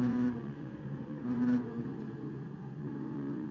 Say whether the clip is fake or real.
fake